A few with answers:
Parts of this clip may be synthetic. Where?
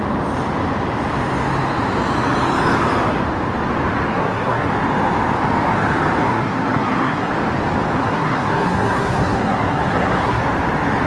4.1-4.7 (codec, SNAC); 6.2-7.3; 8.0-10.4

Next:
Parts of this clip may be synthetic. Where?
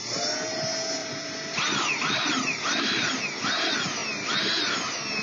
1.0-3.2 (vocoder, BigVGAN v2)